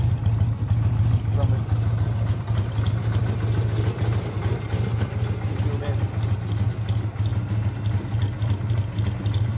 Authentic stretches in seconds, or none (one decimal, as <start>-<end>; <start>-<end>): 0.0-9.6